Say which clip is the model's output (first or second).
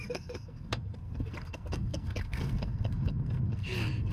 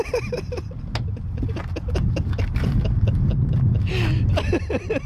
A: first